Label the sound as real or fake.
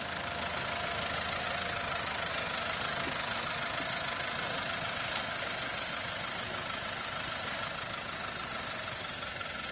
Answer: real